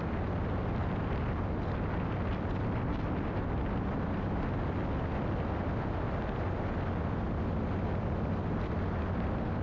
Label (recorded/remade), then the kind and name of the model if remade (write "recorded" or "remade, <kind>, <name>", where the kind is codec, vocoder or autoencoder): recorded